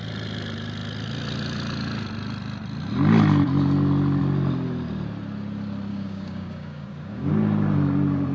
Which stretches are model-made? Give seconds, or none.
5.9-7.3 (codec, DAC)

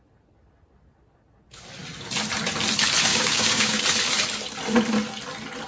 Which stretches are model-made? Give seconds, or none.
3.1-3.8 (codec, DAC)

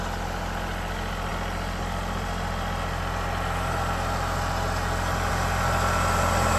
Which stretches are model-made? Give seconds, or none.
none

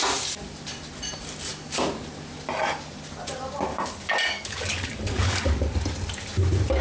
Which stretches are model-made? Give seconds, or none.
3.7-5.5 (codec, DAC)

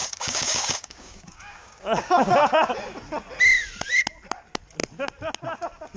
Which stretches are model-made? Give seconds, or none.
0.0-2.7 (codec, DAC)

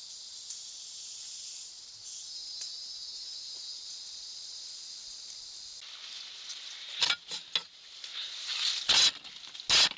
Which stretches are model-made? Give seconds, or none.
none

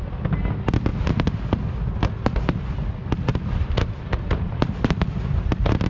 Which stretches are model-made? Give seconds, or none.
none

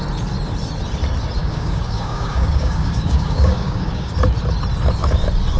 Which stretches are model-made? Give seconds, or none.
1.4-4.1 (codec, DAC)